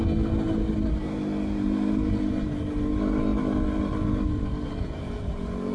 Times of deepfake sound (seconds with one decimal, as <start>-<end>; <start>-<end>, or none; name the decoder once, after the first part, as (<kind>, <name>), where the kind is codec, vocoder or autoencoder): none